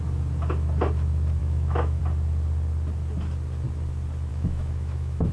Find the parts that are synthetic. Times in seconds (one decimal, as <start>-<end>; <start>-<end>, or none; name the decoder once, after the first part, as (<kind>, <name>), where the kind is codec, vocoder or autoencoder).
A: 1.4-2.0 (autoencoder, DAC-VAE); 4.3-5.3